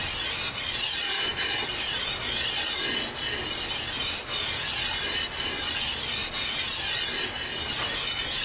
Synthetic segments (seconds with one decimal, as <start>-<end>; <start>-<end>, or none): none